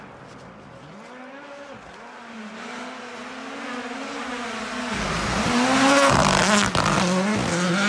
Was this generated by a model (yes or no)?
no